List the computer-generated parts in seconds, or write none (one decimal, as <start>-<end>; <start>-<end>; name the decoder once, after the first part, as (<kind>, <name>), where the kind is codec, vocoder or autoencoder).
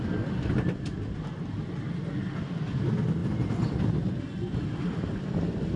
0.9-1.4 (vocoder, BigVGAN v2); 3.2-3.9